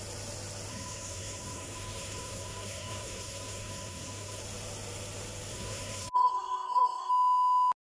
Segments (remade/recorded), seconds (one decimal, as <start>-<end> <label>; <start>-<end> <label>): 0.0-0.7 recorded; 0.7-4.4 remade; 4.4-5.5 recorded; 5.5-7.1 remade; 7.1-7.9 recorded